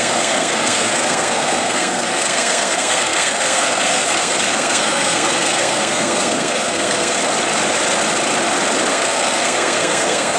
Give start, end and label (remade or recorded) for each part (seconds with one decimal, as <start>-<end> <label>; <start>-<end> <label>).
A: 0.0-7.2 remade; 7.2-8.9 recorded; 8.9-10.4 remade